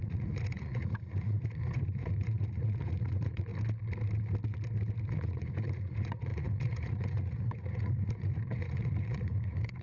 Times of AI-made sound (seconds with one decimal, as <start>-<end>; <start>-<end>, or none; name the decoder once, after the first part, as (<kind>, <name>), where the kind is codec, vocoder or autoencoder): 0.0-3.5 (vocoder, Vocos); 5.1-9.8